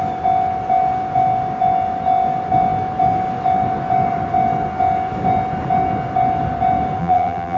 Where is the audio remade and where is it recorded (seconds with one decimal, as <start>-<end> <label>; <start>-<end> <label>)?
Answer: 0.0-7.0 recorded; 7.0-7.6 remade